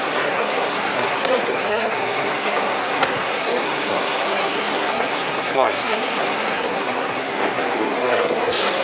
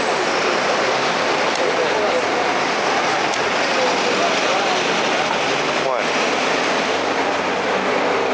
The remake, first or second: first